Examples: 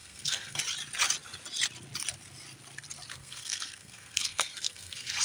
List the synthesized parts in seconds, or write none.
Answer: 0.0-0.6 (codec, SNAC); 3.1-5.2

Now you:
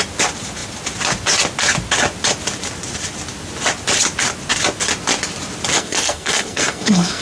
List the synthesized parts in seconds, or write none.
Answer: 5.7-7.2 (codec, SNAC)

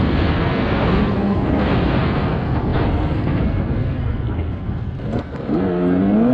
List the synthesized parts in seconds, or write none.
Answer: 0.0-6.3 (codec, SNAC)